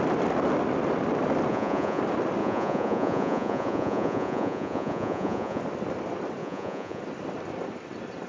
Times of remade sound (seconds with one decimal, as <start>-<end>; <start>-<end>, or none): 1.5-2.0; 2.4-5.6; 6.4-7.0